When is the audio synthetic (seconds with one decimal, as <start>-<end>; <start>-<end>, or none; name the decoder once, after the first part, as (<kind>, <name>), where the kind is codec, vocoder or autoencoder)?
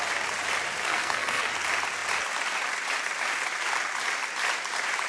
0.8-1.5 (codec, SNAC)